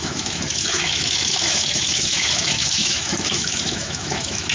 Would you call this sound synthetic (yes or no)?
yes